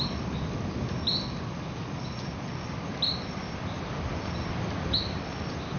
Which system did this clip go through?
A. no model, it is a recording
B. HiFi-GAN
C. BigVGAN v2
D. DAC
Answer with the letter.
A